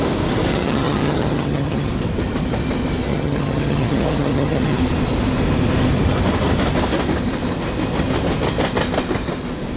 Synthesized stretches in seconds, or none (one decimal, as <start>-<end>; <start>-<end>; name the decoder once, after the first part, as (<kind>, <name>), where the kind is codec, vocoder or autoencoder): 0.5-1.9 (vocoder, HiFi-GAN); 3.1-4.8